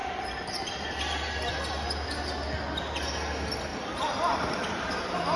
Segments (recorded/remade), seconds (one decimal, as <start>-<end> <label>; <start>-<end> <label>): 0.0-1.0 remade; 1.0-3.7 recorded; 3.7-5.0 remade; 5.0-5.4 recorded